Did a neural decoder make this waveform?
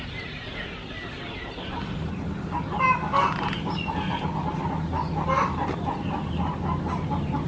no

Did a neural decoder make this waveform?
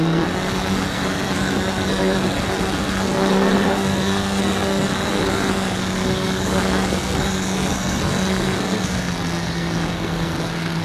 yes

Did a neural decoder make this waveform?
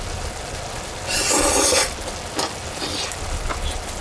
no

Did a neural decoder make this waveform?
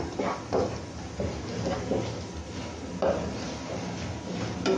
no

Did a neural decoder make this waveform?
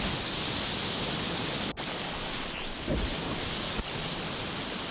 no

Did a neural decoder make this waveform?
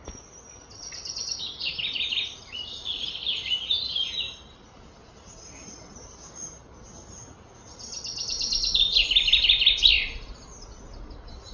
no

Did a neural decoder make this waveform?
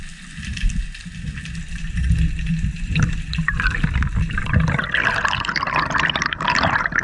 no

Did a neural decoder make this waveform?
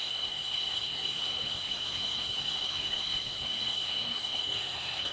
yes